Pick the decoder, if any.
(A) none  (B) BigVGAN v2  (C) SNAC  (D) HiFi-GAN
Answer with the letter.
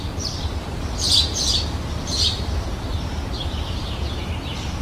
B